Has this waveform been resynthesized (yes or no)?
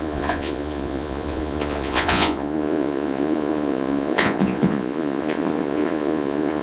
yes